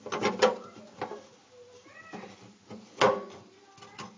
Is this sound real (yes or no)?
yes